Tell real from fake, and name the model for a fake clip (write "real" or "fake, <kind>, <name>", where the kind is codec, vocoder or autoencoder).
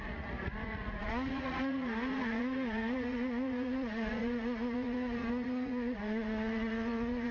fake, vocoder, Vocos